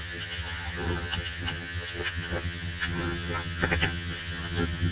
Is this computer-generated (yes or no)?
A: yes